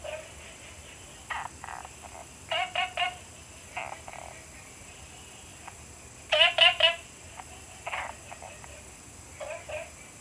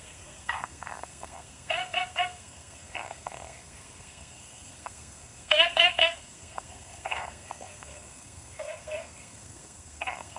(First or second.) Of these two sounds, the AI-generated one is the second